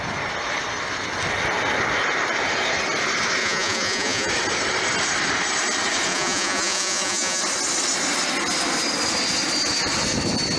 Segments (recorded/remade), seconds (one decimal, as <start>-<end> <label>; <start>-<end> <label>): 0.0-3.4 recorded; 3.4-4.3 remade; 4.3-6.1 recorded; 6.1-7.4 remade; 7.4-10.6 recorded